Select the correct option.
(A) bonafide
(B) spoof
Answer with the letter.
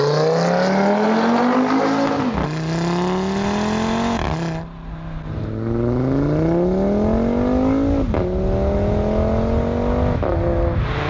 A